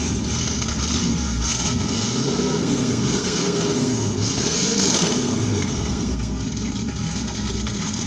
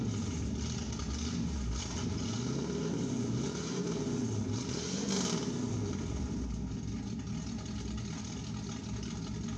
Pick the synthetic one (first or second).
first